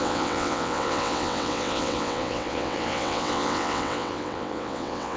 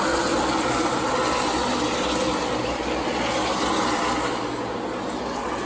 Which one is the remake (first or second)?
first